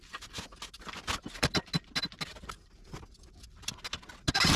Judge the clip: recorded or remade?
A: recorded